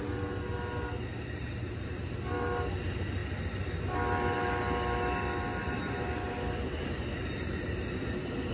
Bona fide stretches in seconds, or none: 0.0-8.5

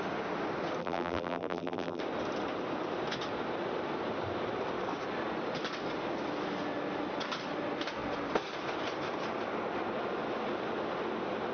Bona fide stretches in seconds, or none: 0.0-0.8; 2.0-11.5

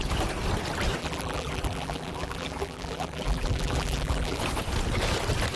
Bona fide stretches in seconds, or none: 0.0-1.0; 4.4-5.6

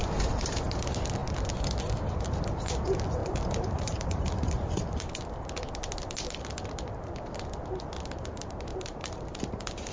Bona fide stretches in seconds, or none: 0.0-3.2; 5.1-8.7

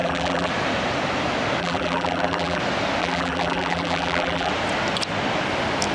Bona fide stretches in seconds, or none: 0.5-1.6; 2.6-3.0; 4.5-5.9

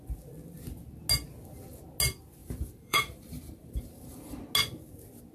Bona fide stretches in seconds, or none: 0.0-2.4; 4.4-5.3

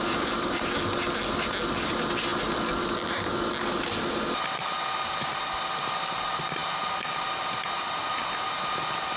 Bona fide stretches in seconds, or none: 0.0-6.6; 8.4-9.2

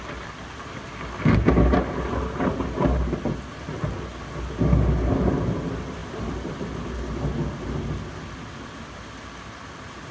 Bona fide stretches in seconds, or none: 0.0-10.1